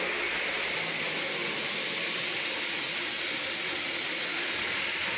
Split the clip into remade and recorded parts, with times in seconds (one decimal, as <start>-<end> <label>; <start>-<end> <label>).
0.0-5.2 recorded